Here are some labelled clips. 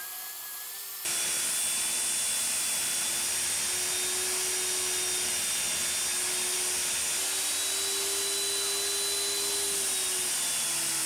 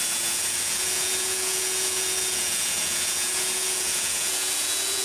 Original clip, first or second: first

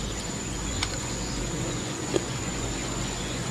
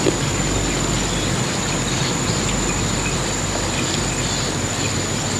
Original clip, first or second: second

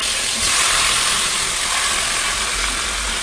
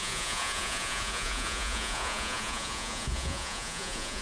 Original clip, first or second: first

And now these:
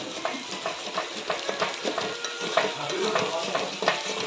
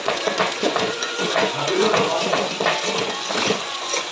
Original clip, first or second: first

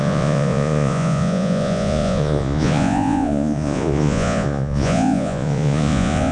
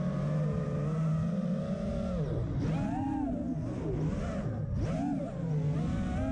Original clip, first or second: second